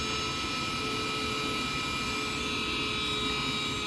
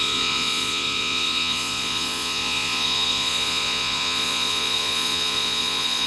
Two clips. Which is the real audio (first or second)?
first